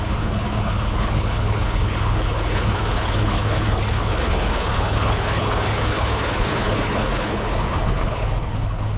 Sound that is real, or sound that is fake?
fake